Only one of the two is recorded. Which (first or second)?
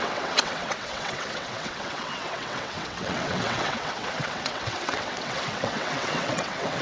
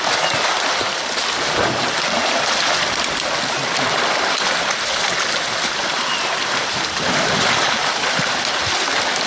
second